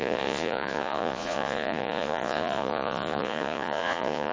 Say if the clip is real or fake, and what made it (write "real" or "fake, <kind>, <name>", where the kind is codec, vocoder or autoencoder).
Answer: fake, vocoder, Vocos